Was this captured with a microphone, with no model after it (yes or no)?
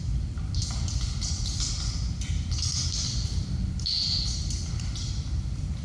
yes